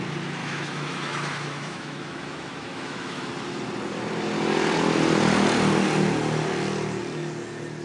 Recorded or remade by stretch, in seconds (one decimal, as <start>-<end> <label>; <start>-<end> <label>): 0.0-0.4 recorded; 0.4-3.3 remade; 3.3-7.8 recorded